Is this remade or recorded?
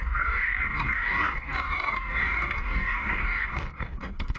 remade